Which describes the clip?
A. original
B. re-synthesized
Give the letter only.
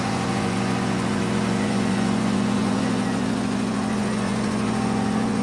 B